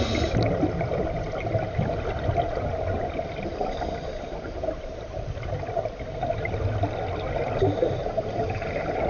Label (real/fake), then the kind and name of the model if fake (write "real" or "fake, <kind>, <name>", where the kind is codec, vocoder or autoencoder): real